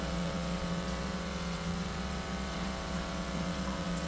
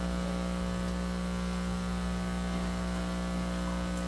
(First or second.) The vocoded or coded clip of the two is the first